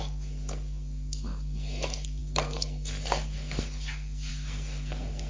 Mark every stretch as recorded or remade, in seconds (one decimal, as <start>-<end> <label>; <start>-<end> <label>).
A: 0.0-5.3 remade